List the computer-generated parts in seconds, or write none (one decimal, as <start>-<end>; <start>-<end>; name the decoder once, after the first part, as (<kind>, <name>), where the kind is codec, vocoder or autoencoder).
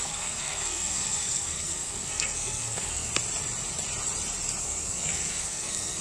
0.0-3.1 (codec, SNAC); 4.6-6.0